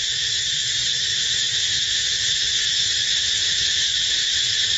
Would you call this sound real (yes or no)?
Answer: no